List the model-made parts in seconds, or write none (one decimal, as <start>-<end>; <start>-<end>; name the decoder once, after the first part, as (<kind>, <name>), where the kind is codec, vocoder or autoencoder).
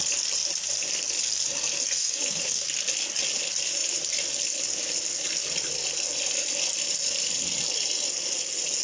2.0-2.7 (autoencoder, DAC-VAE)